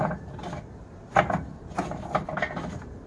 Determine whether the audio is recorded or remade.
recorded